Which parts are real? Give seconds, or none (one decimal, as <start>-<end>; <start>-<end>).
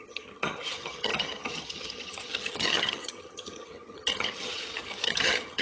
none